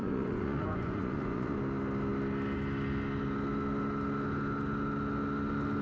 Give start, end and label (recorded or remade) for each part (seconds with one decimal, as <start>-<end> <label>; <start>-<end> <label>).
0.0-1.6 remade; 1.6-5.8 recorded